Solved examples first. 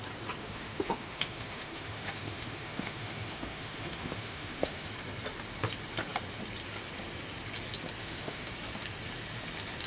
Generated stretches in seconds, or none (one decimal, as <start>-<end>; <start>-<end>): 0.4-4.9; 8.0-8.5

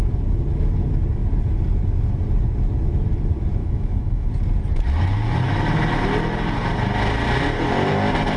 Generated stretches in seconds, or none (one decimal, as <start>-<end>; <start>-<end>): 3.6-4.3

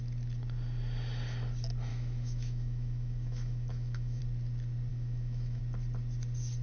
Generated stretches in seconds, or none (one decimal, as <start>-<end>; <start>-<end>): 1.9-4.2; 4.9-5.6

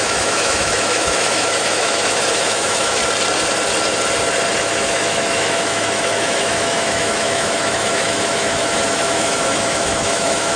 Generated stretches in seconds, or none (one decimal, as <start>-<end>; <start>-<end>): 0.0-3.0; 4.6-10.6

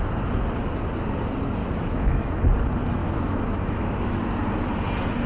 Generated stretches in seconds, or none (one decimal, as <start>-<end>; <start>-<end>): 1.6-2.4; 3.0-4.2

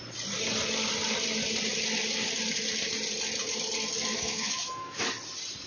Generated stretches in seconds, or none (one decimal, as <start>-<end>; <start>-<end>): 4.1-5.0

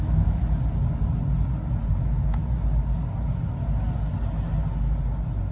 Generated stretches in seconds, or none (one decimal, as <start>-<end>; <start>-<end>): 0.0-0.4; 1.9-2.4